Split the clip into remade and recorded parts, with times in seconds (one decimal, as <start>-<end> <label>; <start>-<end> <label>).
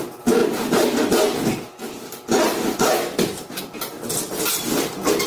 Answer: 0.0-5.3 recorded